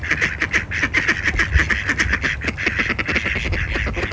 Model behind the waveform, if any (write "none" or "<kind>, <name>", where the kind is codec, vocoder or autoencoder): none